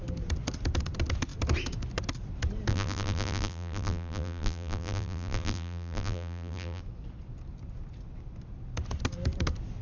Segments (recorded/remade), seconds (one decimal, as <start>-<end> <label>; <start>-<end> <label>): 0.0-2.7 recorded; 2.7-6.8 remade; 6.8-9.8 recorded

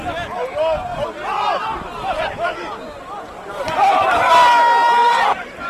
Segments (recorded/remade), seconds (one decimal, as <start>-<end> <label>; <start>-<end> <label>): 0.0-0.9 recorded; 0.9-4.3 remade; 4.3-5.0 recorded; 5.0-5.7 remade

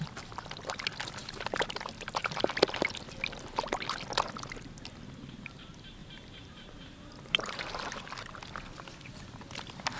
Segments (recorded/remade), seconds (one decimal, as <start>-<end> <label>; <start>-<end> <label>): 0.0-1.2 recorded; 1.2-2.6 remade; 2.6-6.0 recorded; 6.0-7.6 remade; 7.6-10.0 recorded